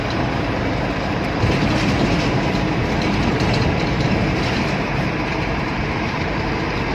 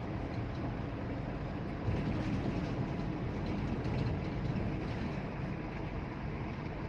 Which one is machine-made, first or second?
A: first